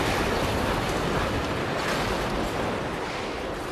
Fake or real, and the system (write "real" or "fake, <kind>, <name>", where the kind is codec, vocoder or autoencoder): real